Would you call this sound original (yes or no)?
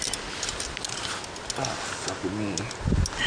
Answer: yes